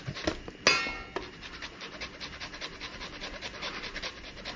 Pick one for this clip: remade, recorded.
recorded